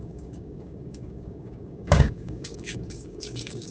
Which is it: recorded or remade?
remade